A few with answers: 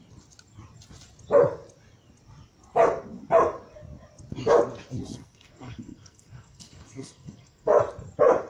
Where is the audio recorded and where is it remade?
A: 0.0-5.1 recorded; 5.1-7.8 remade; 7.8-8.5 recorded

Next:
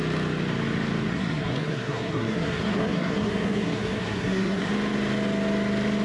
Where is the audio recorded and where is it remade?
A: 0.0-1.1 recorded; 1.1-4.7 remade; 4.7-6.0 recorded

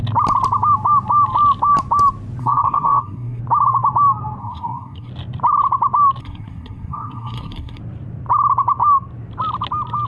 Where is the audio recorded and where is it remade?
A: 0.0-2.4 recorded; 2.4-3.4 remade; 3.4-4.4 recorded; 4.4-5.1 remade; 5.1-6.2 recorded; 6.2-7.8 remade; 7.8-10.1 recorded

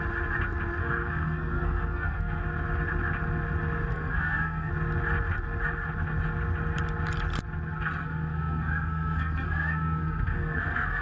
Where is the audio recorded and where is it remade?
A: 0.0-0.8 recorded; 0.8-2.4 remade; 2.4-3.9 recorded; 3.9-4.7 remade; 4.7-8.0 recorded; 8.0-11.0 remade

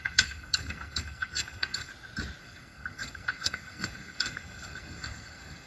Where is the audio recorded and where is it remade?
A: 0.0-1.9 remade; 1.9-2.4 recorded; 2.4-5.7 remade

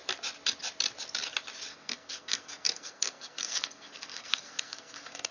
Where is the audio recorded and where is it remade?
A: 0.0-1.7 recorded; 1.7-5.3 remade

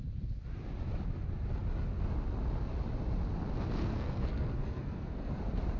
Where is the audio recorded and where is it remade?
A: 0.0-3.8 recorded; 3.8-5.3 remade; 5.3-5.8 recorded